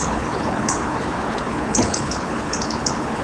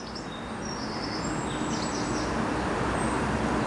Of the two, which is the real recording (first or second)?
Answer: second